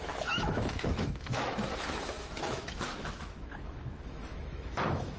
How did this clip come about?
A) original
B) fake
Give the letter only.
B